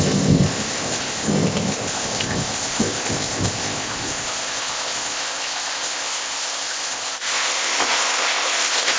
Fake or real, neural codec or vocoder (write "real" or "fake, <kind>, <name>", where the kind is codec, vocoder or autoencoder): fake, codec, ZipCodec